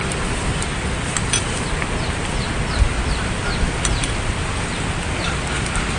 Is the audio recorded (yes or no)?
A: yes